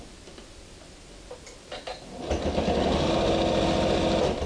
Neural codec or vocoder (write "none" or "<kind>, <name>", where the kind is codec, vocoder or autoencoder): none